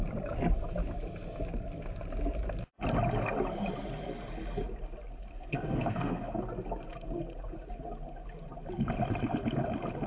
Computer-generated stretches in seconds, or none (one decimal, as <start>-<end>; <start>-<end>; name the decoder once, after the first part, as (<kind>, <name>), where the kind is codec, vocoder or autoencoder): 5.3-6.4 (codec, SNAC)

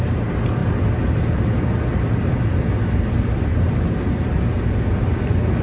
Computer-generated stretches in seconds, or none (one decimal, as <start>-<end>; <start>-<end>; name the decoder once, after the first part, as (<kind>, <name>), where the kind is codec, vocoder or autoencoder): 3.5-4.3 (vocoder, BigVGAN v2)

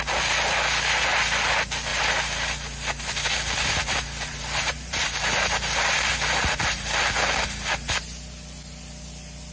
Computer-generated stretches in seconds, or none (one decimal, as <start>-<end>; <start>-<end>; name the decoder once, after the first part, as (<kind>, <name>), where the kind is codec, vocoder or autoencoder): 1.9-7.0 (vocoder, BigVGAN v2)

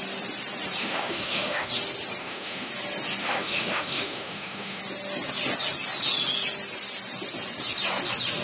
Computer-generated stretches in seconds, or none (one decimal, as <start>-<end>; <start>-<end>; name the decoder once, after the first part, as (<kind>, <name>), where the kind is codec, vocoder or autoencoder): 0.8-1.7 (autoencoder, DAC-VAE); 2.2-2.7; 3.2-4.8

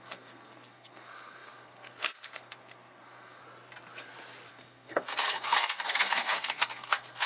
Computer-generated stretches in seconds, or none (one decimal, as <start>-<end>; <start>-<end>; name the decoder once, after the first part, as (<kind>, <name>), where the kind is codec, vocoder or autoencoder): 0.0-3.4 (codec, SNAC); 4.5-7.3

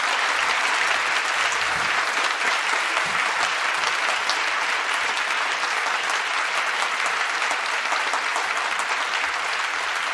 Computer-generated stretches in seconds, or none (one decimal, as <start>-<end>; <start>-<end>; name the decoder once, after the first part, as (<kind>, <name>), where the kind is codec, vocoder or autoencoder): none

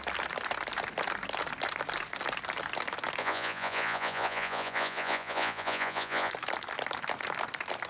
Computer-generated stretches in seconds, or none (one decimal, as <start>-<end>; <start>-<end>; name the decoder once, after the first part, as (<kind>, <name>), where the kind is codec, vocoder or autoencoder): 3.2-6.3 (vocoder, Vocos)